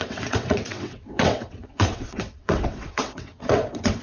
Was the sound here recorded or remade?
remade